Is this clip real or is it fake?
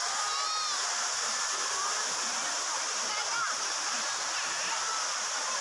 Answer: real